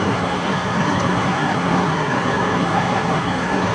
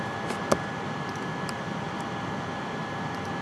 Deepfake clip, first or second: first